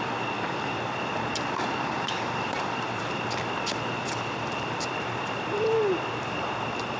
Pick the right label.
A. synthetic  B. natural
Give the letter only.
A